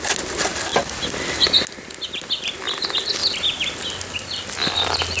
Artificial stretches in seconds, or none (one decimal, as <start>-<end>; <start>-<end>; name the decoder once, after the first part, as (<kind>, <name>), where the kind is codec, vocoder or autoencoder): none